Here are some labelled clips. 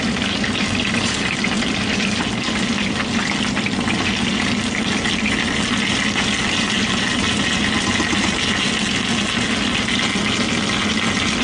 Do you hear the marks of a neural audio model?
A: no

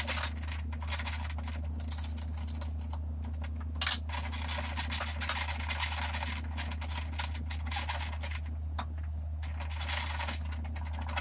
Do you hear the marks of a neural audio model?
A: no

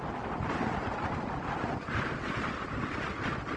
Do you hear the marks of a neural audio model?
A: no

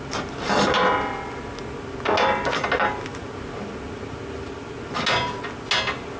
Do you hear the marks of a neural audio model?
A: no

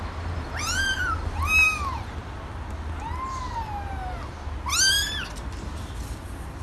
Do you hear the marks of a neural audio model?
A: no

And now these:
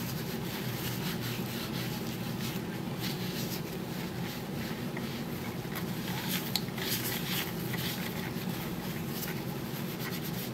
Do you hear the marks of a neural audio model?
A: no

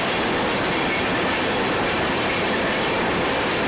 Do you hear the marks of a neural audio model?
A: yes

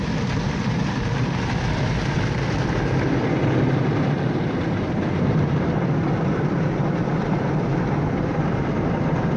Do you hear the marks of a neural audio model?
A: yes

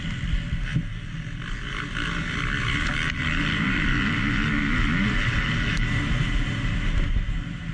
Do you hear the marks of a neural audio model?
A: no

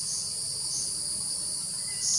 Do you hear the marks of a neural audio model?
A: no